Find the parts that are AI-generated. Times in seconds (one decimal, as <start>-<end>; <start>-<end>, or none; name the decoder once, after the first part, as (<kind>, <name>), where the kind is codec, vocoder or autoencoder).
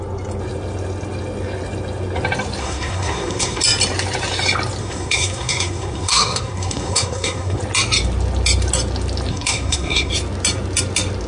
2.6-3.6 (codec, SNAC); 4.8-7.6; 9.3-10.1